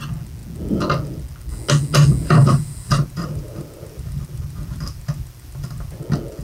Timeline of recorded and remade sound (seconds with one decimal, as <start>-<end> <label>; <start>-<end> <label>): 0.0-2.2 recorded; 2.2-6.0 remade; 6.0-6.4 recorded